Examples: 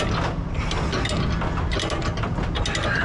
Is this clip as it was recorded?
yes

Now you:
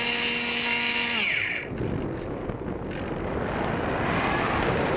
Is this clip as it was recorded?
yes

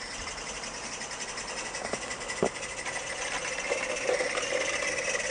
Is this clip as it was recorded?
yes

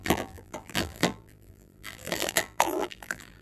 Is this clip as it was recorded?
no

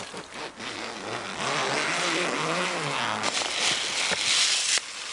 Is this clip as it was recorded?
yes